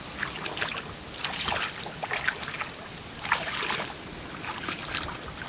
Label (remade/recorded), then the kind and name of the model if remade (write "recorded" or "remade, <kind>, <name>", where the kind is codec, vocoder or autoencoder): recorded